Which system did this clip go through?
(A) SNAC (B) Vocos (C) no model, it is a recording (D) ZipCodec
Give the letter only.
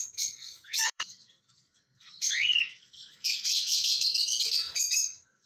A